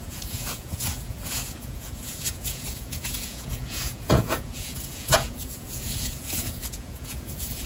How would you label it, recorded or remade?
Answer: remade